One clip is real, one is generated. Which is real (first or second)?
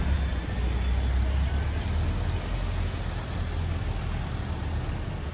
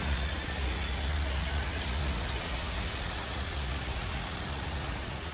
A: first